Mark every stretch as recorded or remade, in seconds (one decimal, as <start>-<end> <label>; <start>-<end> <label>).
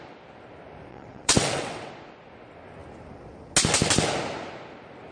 0.0-0.9 recorded; 0.9-1.9 remade; 1.9-5.1 recorded